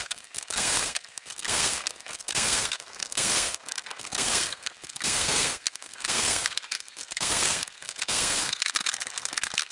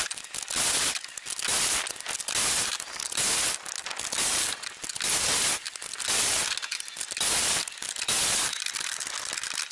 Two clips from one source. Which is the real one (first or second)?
second